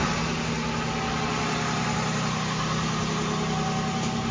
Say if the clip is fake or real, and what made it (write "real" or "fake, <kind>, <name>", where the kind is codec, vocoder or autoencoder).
real